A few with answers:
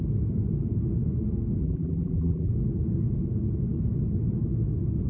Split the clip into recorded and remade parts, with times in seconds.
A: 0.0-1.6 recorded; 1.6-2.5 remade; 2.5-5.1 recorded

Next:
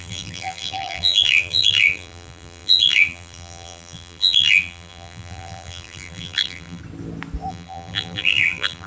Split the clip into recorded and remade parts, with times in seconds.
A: 0.0-6.8 remade; 6.8-7.5 recorded; 7.5-8.9 remade

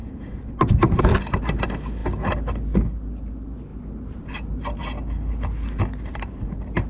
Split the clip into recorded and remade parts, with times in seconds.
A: 0.0-1.0 remade; 1.0-6.9 recorded

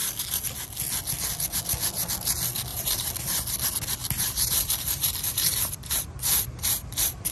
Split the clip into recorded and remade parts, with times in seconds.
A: 0.0-2.7 recorded; 2.7-3.3 remade; 3.3-4.0 recorded; 4.0-7.3 remade

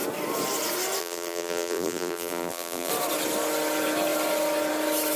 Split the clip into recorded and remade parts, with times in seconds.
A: 0.0-1.0 recorded; 1.0-2.9 remade; 2.9-5.2 recorded